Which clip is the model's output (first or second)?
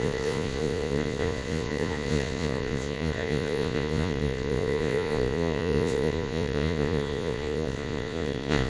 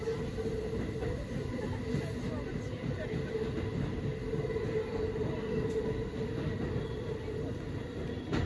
first